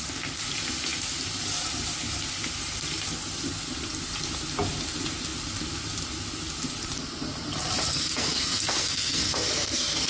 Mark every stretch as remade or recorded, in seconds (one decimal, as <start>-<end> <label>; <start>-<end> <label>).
0.0-7.9 recorded; 7.9-10.1 remade